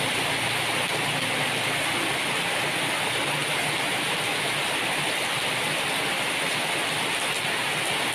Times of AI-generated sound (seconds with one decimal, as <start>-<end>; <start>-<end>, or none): none